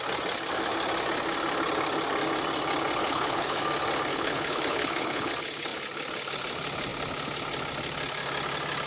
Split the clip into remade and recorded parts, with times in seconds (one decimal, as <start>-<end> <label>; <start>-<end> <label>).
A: 0.0-3.0 recorded; 3.0-3.6 remade; 3.6-4.1 recorded; 4.1-5.3 remade; 5.3-8.9 recorded

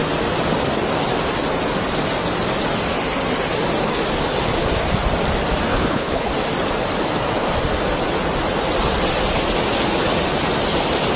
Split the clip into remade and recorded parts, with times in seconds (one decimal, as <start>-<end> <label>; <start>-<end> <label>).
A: 0.0-5.7 recorded; 5.7-6.3 remade; 6.3-11.2 recorded

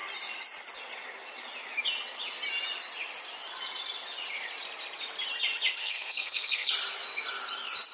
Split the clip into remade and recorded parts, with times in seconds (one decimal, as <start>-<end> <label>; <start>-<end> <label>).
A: 0.0-5.8 recorded; 5.8-6.7 remade; 6.7-7.9 recorded

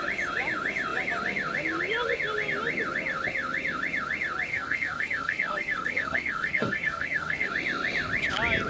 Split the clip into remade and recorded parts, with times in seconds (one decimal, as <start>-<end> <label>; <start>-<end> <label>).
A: 0.0-4.5 recorded; 4.5-7.5 remade; 7.5-8.7 recorded

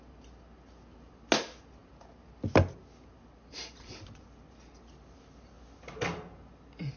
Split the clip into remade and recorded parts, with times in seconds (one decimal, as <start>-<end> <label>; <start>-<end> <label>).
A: 0.0-7.0 recorded